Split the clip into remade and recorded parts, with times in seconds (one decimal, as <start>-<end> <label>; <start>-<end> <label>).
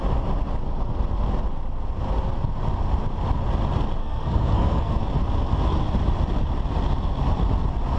0.0-4.0 recorded; 4.0-5.0 remade; 5.0-8.0 recorded